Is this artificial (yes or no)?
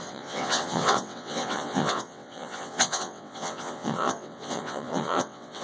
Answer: yes